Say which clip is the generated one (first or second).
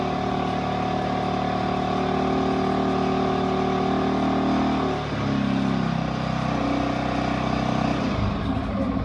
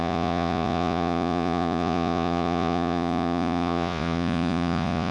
second